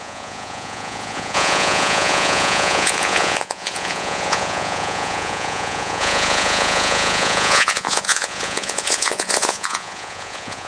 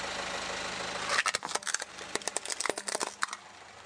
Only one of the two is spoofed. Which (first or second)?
first